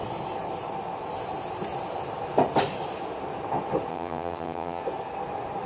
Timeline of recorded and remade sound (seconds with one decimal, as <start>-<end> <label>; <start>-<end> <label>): 0.0-3.9 recorded; 3.9-4.8 remade; 4.8-5.7 recorded